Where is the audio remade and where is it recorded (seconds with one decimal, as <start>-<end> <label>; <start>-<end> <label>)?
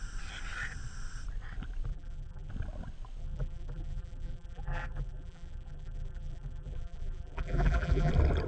0.0-1.9 recorded; 1.9-2.5 remade; 2.5-3.2 recorded; 3.2-8.1 remade; 8.1-8.5 recorded